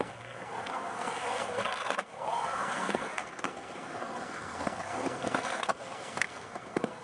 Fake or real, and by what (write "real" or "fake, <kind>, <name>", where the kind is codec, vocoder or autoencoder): fake, codec, SNAC